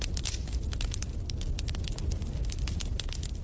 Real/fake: real